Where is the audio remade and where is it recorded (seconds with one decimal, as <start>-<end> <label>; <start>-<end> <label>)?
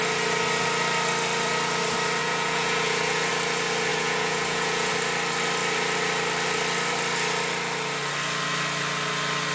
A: 0.0-2.2 recorded; 2.2-3.3 remade; 3.3-3.9 recorded; 3.9-4.9 remade; 4.9-9.5 recorded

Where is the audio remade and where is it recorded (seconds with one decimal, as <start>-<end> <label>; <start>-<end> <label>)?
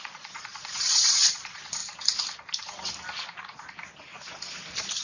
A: 0.0-1.8 remade; 1.8-5.0 recorded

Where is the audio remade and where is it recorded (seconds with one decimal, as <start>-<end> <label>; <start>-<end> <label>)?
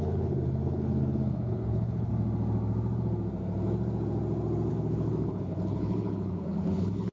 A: 0.0-2.1 remade; 2.1-4.7 recorded; 4.7-7.1 remade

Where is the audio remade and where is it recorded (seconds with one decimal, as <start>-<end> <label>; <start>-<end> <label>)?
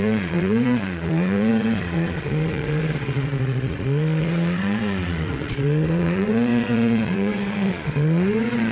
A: 0.0-8.7 remade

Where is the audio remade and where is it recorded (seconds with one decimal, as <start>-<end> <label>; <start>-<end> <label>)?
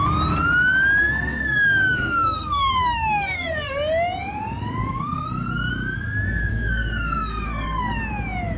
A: 0.0-1.0 recorded; 1.0-3.7 remade; 3.7-4.8 recorded; 4.8-5.7 remade; 5.7-6.5 recorded; 6.5-8.0 remade; 8.0-8.6 recorded